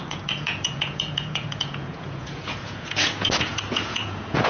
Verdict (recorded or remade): remade